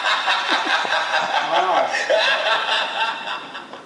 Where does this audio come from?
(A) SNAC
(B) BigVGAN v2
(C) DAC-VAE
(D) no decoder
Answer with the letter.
D